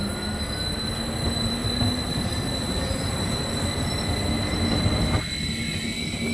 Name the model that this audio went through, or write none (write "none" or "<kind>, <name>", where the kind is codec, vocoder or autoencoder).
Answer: none